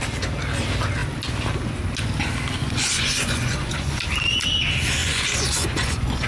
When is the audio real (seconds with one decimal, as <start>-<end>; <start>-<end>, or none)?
0.0-2.6; 4.0-5.0